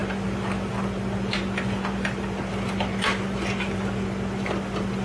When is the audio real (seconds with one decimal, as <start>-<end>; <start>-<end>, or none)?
0.0-5.0